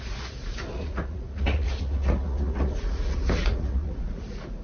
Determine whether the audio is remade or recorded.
remade